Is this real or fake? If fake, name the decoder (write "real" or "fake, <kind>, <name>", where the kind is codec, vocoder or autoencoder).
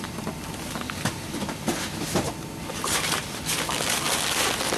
real